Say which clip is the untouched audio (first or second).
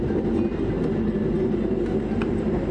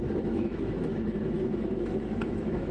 first